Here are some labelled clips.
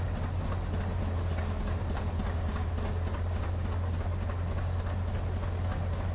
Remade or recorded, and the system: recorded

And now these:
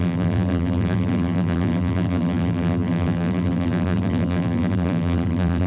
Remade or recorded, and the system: remade, vocoder, BigVGAN v2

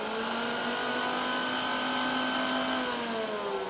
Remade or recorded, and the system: recorded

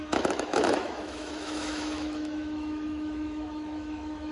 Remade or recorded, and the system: remade, autoencoder, DAC-VAE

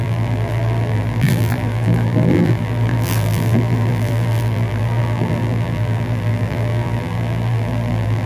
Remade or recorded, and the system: remade, vocoder, BigVGAN v2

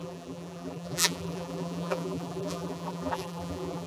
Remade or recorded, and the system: remade, vocoder, BigVGAN v2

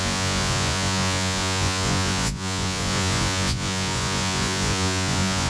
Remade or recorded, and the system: remade, vocoder, Vocos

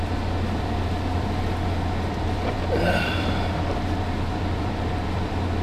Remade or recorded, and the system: remade, vocoder, BigVGAN v2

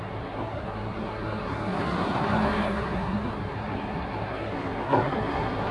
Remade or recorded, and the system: remade, codec, SNAC